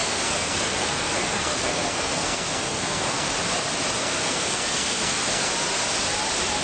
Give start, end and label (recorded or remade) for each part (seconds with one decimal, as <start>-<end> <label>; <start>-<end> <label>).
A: 0.0-3.3 remade; 3.3-4.0 recorded; 4.0-5.5 remade; 5.5-6.6 recorded